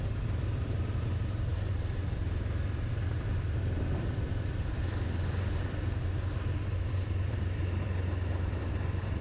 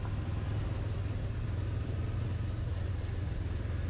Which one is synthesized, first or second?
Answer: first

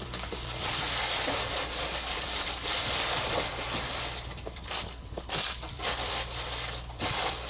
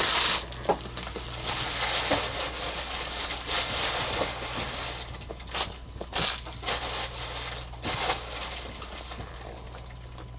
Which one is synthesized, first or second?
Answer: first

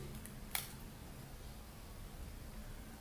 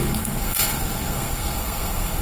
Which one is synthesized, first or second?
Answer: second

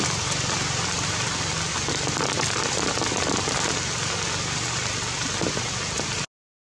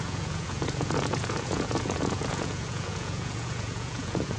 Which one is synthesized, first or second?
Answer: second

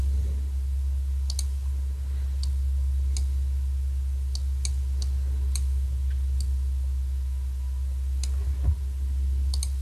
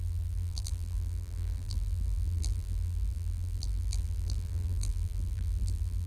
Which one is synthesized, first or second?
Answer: second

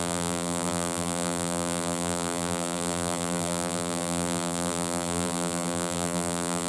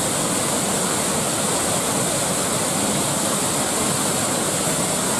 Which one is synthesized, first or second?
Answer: first